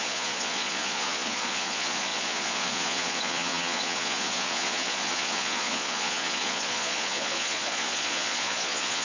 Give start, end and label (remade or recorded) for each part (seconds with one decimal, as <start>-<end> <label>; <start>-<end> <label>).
0.0-9.0 remade